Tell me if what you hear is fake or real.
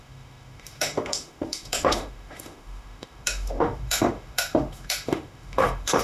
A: fake